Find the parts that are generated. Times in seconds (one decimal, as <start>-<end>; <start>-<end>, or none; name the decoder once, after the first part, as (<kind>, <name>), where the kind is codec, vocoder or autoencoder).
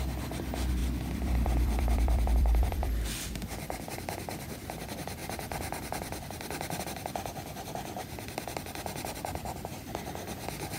0.8-4.7 (vocoder, BigVGAN v2); 5.2-6.8